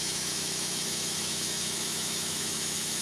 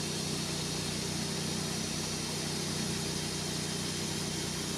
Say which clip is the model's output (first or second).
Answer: first